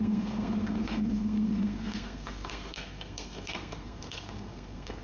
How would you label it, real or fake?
fake